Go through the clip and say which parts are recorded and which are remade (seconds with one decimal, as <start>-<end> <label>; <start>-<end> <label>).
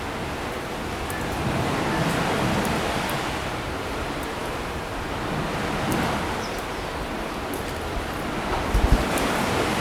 0.0-9.8 recorded